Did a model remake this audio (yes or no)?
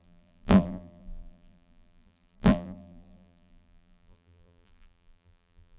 yes